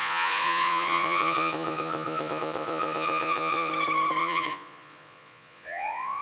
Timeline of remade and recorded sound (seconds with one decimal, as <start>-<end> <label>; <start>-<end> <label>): 0.0-3.7 remade; 3.7-4.2 recorded; 4.2-6.2 remade